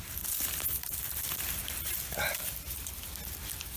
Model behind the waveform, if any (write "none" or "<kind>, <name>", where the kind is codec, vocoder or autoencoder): none